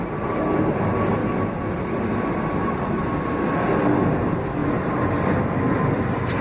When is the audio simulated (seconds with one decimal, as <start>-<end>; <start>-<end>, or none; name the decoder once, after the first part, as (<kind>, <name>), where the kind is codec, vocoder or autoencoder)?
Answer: none